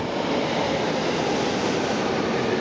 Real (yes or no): yes